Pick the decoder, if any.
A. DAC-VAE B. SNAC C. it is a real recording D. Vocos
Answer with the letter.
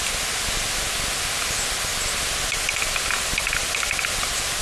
C